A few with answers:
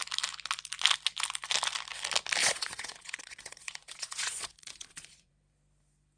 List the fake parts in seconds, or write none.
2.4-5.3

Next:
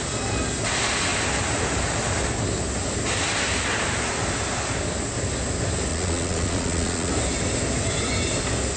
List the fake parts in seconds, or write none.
5.9-7.1